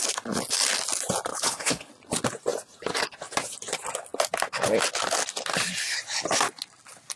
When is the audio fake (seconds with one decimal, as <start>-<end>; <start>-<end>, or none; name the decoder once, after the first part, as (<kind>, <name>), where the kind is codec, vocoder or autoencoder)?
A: 1.3-1.9 (codec, HILCodec)